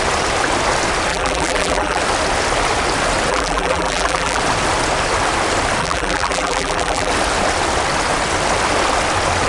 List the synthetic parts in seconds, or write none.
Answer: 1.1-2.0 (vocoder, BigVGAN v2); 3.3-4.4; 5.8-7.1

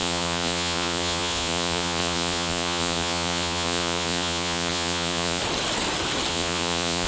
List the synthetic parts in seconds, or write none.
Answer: 0.0-5.4 (vocoder, Vocos); 6.3-7.1

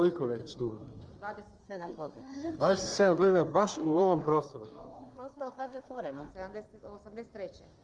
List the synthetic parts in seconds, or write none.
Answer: 0.4-1.0 (codec, SNAC); 1.6-6.3

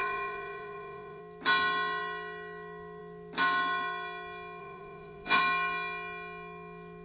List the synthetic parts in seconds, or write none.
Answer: 0.0-1.2 (vocoder, Vocos); 4.6-5.4

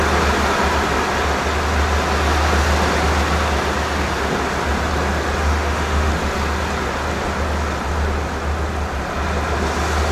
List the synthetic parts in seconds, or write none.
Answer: 5.4-6.1 (autoencoder, DAC-VAE)

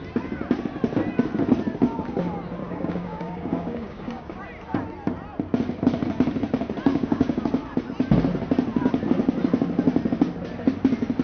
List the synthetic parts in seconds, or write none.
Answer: 2.6-4.4 (codec, DAC); 6.9-7.5

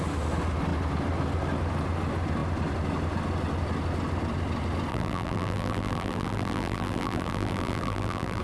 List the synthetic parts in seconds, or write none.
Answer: 4.9-8.4 (vocoder, BigVGAN v2)

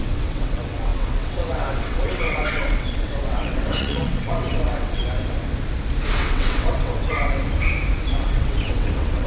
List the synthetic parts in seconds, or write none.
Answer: 0.0-5.0 (vocoder, WaveNeXt); 6.2-7.4; 8.1-9.3